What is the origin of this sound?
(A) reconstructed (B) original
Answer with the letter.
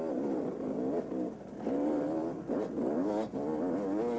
B